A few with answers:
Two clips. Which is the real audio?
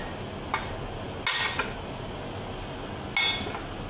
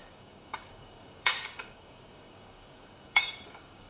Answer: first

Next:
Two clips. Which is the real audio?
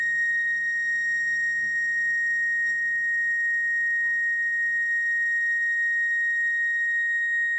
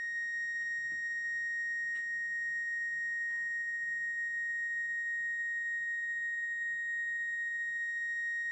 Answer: second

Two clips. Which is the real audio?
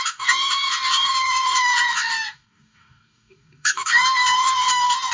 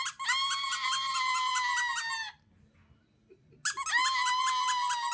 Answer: second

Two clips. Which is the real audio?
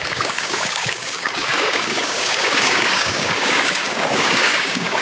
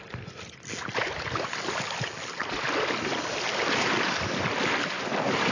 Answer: second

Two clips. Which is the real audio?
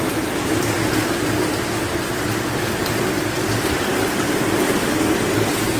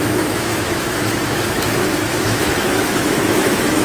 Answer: first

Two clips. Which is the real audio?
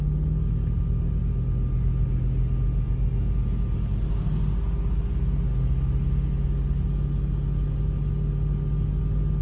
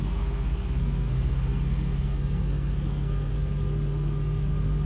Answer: first